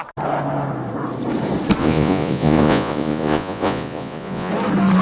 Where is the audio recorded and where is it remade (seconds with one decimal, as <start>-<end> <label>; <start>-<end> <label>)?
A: 0.0-1.8 recorded; 1.8-4.5 remade; 4.5-5.0 recorded